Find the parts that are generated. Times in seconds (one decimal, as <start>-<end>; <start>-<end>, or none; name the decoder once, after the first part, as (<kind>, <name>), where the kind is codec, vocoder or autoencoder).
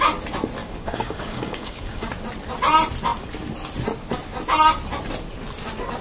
0.6-2.1 (codec, DAC)